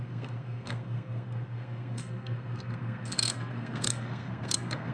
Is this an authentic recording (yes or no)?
no